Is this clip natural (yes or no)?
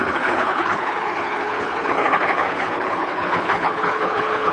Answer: no